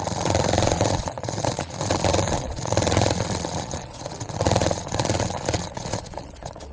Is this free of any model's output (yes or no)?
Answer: no